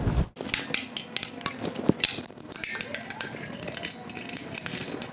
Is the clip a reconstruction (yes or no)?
no